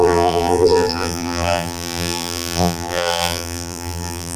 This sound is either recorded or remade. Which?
remade